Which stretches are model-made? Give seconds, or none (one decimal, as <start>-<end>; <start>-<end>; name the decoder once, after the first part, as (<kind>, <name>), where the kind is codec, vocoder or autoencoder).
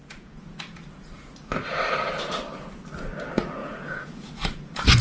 0.0-1.3 (vocoder, Vocos); 3.6-5.0